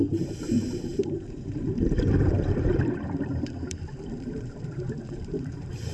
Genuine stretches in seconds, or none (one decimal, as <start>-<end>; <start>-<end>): none